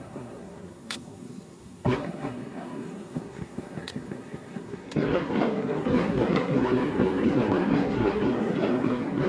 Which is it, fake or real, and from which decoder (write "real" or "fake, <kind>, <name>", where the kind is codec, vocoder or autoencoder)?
fake, codec, SNAC